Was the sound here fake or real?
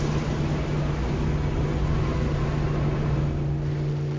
real